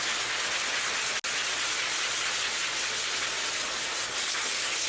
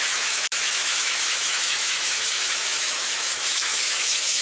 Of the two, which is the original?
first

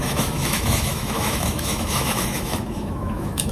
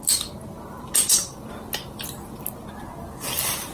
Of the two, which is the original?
second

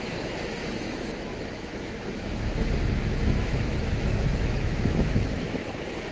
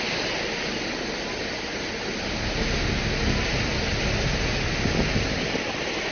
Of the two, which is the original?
second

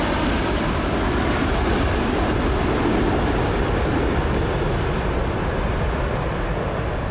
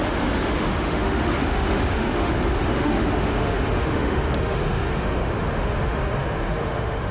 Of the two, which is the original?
first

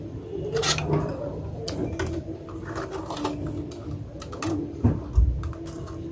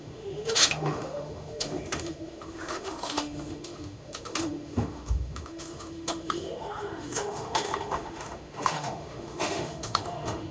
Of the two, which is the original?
first